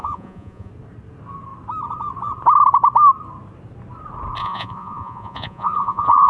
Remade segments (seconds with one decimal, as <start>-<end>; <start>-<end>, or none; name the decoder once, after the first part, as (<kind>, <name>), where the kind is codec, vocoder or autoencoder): 0.0-0.7 (vocoder, Vocos); 4.4-6.3